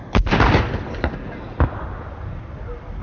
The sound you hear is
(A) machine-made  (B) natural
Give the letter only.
B